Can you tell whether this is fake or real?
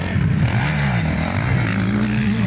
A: real